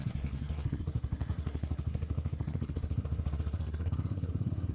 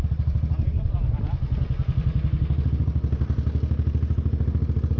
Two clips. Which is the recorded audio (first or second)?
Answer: second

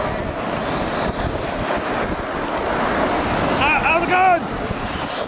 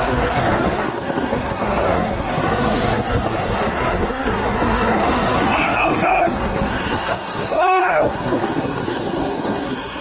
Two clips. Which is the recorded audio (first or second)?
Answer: first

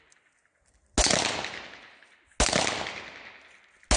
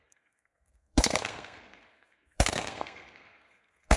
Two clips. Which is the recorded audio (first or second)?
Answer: first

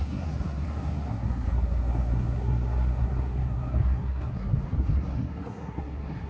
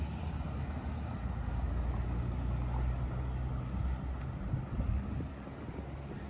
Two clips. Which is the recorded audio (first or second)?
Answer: second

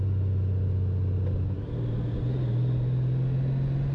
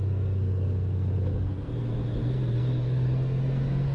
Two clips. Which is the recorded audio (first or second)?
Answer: first